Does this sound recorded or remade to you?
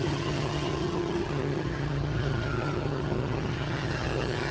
remade